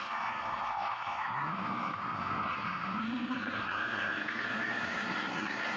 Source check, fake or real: fake